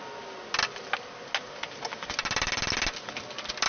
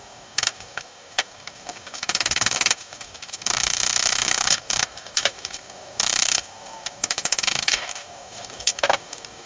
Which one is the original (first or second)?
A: first